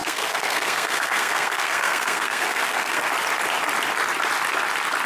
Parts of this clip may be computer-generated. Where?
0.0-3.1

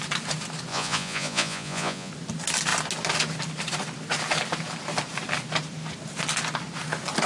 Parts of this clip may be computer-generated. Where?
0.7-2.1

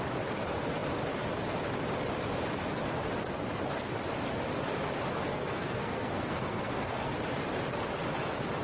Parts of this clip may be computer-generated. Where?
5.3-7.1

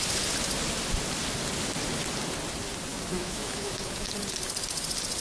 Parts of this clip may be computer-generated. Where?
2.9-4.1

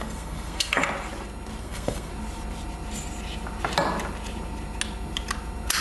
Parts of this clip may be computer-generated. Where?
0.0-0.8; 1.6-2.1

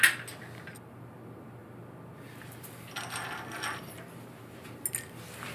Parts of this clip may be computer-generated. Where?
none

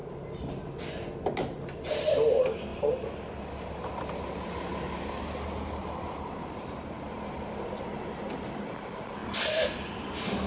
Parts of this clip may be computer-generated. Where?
none

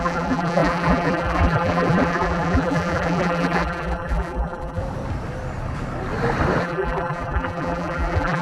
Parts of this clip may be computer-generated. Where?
0.0-4.8; 6.6-8.4